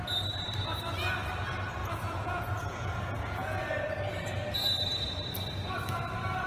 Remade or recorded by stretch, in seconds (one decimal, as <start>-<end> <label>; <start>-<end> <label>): 0.0-1.8 recorded; 1.8-3.7 remade; 3.7-6.5 recorded